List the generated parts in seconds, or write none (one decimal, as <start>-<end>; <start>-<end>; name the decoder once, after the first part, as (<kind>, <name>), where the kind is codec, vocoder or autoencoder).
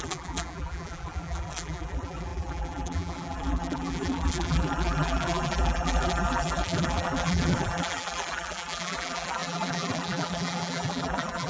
0.0-11.5 (vocoder, BigVGAN v2)